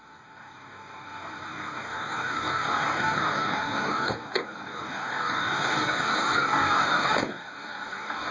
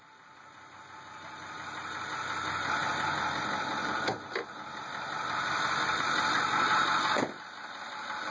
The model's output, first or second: first